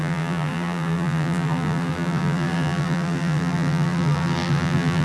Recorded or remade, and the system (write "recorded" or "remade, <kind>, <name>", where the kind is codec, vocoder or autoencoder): remade, vocoder, BigVGAN v2